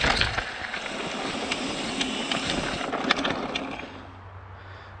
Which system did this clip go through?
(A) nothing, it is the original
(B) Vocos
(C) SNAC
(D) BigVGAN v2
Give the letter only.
A